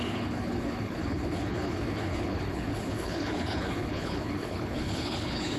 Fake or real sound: fake